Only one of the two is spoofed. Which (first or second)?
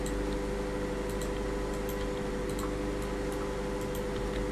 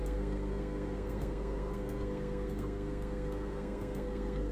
second